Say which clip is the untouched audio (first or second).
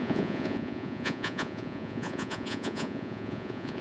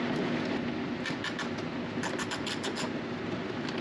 second